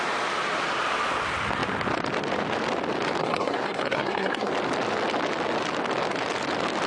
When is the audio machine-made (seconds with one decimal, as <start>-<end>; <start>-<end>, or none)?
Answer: 3.2-4.5